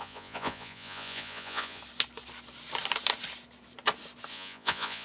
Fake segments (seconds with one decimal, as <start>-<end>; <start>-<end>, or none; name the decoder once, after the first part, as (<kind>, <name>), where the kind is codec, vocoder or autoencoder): 0.0-1.8 (vocoder, Vocos); 4.3-5.0